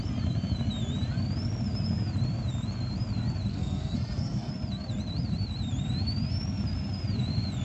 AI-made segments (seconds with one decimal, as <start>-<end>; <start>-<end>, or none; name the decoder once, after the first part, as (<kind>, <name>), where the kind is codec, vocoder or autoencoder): 3.5-4.5 (codec, SNAC)